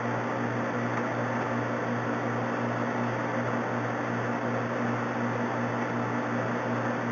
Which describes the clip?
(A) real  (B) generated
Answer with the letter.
A